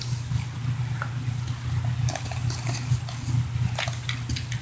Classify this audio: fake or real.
real